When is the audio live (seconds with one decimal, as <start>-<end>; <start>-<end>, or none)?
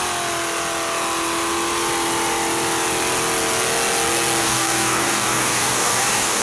0.0-4.4